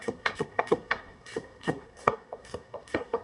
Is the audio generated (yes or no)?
yes